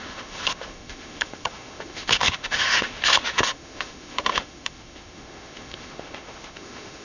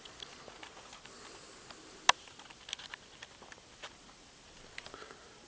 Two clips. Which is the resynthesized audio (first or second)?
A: first